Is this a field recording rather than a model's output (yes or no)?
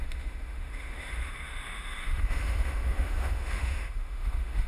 no